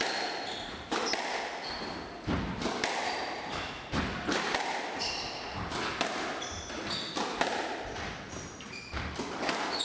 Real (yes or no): yes